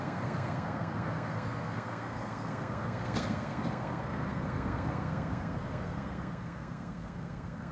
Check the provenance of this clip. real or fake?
fake